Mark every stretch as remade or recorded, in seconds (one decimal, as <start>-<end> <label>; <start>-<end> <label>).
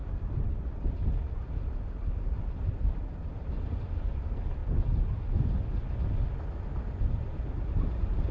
0.0-8.3 recorded